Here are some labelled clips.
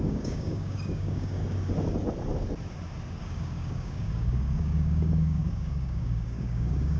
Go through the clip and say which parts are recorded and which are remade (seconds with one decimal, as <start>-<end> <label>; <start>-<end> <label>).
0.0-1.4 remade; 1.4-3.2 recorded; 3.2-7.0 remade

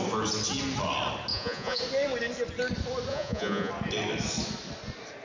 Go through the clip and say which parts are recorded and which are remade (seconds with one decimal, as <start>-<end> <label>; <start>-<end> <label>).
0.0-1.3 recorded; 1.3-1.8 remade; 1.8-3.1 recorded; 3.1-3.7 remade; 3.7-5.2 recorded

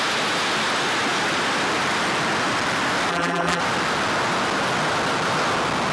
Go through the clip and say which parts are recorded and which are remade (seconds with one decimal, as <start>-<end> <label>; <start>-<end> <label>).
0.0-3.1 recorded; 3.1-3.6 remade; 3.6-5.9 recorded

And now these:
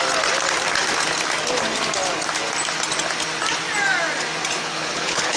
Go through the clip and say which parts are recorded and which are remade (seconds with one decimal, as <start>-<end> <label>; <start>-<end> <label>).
0.0-4.6 recorded; 4.6-5.4 remade